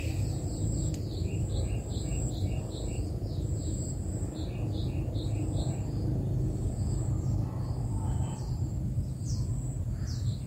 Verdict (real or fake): real